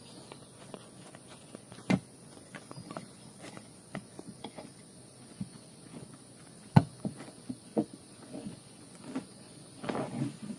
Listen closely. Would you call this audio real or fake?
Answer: fake